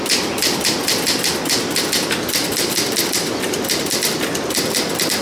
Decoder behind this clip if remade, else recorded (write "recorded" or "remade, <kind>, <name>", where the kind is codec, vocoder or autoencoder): recorded